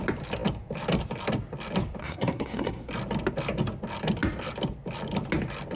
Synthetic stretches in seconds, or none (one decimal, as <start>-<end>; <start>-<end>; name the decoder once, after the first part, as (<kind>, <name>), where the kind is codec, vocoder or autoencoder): 2.0-2.9 (codec, SNAC)